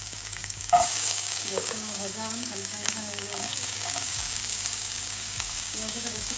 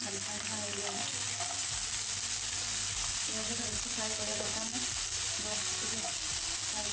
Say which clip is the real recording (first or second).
second